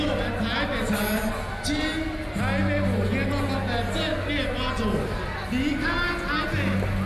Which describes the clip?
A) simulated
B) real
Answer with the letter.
B